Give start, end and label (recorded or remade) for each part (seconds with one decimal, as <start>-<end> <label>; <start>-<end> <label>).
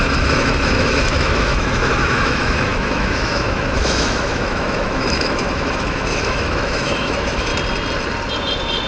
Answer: 0.0-7.5 remade; 7.5-8.9 recorded